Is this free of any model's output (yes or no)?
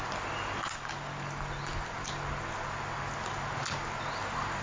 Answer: yes